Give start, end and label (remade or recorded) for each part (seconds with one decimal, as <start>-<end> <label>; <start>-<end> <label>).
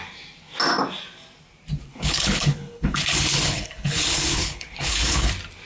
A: 0.0-1.9 recorded; 1.9-5.3 remade; 5.3-5.7 recorded